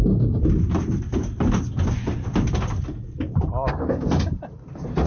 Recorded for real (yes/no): yes